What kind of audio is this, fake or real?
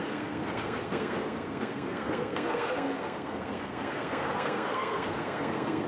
fake